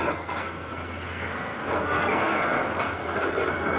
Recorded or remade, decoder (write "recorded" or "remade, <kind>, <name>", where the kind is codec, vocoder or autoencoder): remade, codec, SNAC